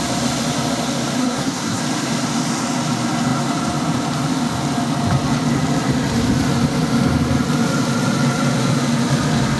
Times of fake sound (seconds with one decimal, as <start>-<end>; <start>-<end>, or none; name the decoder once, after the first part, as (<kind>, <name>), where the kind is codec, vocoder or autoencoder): 1.2-1.8 (codec, SNAC)